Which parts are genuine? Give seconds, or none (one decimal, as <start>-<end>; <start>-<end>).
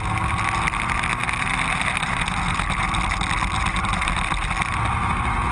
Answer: 0.0-5.5